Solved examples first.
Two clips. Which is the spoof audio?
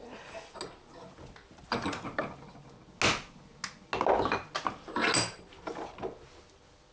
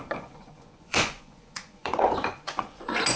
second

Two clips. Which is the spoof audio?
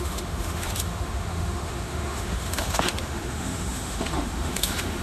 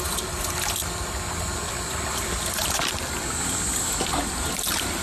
first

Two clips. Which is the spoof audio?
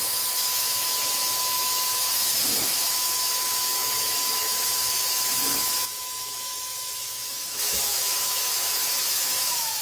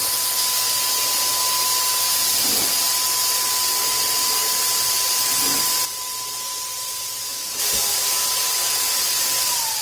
first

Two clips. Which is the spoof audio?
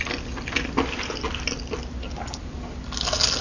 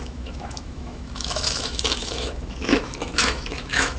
second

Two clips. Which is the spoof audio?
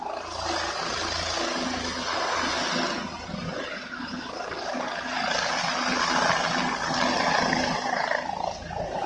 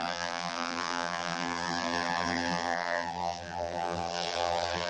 second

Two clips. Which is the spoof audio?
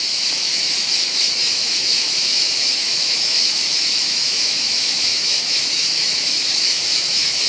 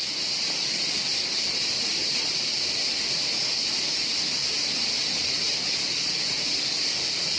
first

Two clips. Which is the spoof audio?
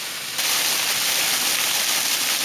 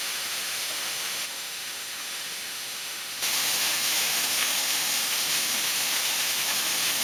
second